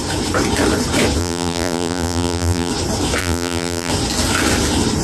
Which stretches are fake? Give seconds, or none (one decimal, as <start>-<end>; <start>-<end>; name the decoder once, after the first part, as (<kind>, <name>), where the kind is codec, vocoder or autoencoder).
1.2-2.7 (vocoder, BigVGAN v2); 3.2-3.9